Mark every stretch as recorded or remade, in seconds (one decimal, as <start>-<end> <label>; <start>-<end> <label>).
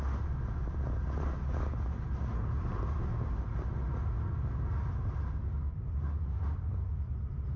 0.0-2.4 recorded; 2.4-3.0 remade; 3.0-7.6 recorded